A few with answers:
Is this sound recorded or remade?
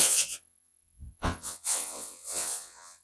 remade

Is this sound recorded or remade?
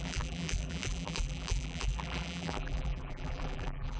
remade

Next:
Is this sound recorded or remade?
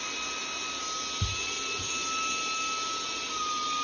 recorded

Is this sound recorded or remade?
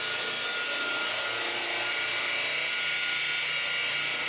recorded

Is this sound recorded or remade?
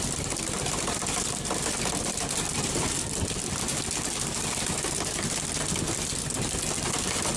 remade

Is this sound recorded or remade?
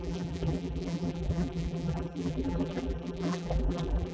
remade